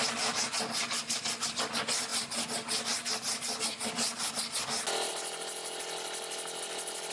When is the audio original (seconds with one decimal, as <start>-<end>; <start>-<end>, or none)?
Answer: 0.0-7.1